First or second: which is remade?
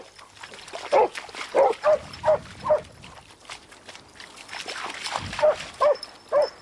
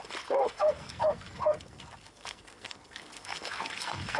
second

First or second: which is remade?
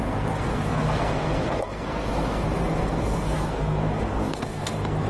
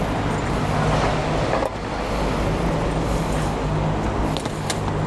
first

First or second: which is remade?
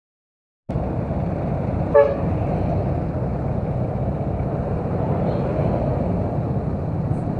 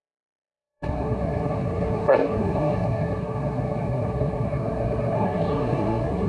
second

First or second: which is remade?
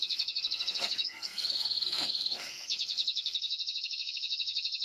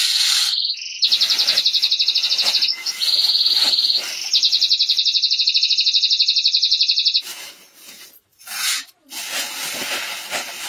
first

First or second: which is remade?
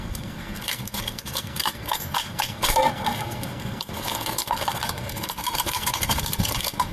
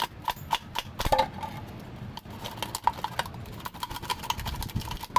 first